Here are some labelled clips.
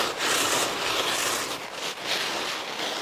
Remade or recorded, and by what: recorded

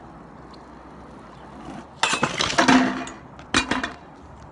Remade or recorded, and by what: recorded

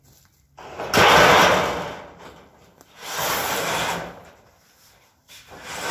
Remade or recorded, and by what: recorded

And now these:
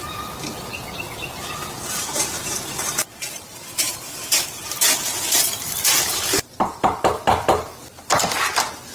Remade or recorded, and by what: recorded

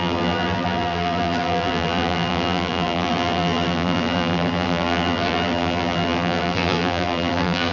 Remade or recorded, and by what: remade, vocoder, BigVGAN v2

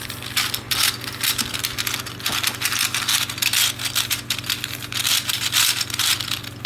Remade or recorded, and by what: recorded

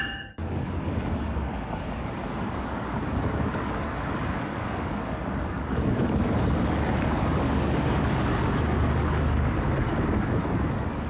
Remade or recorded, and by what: remade, codec, DAC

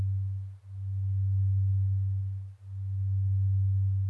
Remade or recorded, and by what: recorded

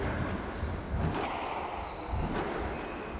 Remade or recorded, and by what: recorded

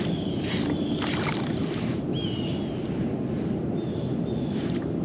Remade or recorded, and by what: recorded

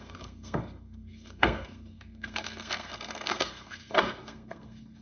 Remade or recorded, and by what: remade, codec, SNAC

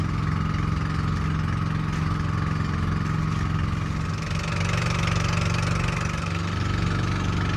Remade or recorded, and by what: recorded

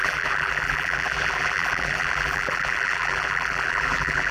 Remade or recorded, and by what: remade, vocoder, BigVGAN v2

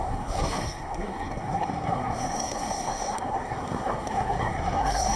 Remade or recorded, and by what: remade, codec, SNAC